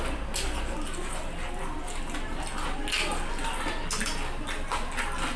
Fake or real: real